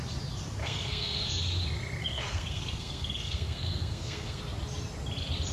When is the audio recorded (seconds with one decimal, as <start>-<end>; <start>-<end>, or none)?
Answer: 0.0-0.6; 1.3-2.0; 4.4-5.5